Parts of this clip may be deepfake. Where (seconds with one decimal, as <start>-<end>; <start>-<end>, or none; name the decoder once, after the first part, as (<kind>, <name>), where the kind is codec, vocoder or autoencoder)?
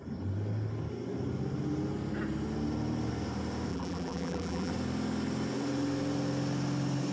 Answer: 3.7-4.7 (vocoder, BigVGAN v2)